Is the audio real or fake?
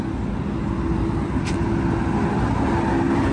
real